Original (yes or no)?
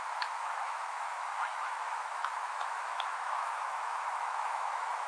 no